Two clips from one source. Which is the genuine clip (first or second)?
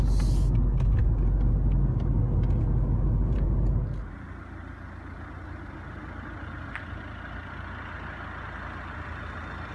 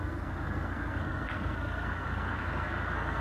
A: first